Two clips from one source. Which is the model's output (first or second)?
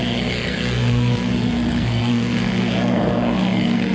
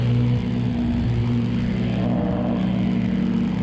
first